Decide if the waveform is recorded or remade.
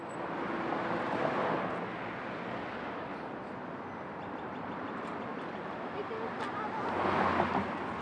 recorded